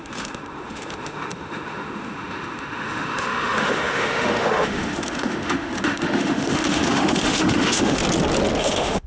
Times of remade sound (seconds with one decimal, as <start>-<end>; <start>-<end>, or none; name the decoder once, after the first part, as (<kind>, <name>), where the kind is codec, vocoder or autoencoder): 0.0-8.0 (autoencoder, DAC-VAE); 8.6-9.1